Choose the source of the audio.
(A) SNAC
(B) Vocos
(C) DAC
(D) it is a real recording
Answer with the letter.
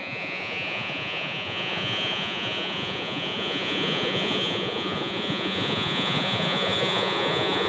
B